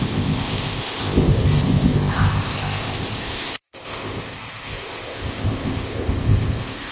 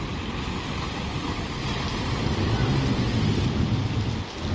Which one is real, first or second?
second